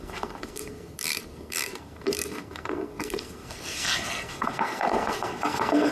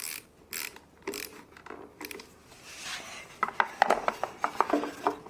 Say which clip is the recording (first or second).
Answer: second